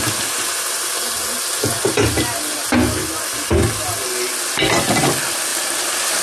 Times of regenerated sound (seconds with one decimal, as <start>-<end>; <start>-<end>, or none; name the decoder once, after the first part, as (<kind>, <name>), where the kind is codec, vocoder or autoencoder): none